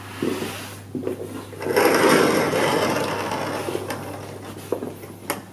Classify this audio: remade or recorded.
recorded